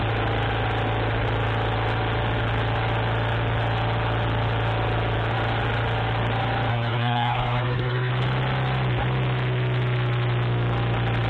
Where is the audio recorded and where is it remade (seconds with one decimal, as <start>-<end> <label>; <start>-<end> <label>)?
0.0-6.7 recorded; 6.7-8.1 remade; 8.1-11.3 recorded